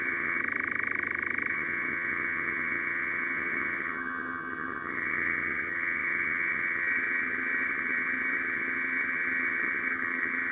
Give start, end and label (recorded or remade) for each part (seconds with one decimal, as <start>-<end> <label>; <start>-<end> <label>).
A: 0.0-0.4 remade; 0.4-1.5 recorded; 1.5-10.5 remade